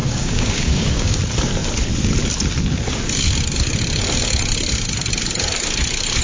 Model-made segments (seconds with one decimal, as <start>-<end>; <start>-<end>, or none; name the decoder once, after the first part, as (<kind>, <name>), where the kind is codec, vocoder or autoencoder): 0.0-1.2 (codec, DAC)